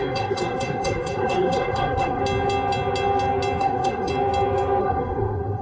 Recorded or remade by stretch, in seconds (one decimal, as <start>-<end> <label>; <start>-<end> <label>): 0.0-2.2 remade; 2.2-3.6 recorded; 3.6-4.1 remade; 4.1-4.8 recorded; 4.8-5.6 remade